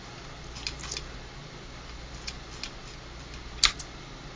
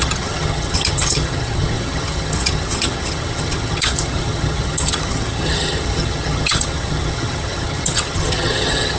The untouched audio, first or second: first